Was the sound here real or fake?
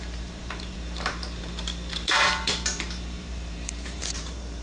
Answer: fake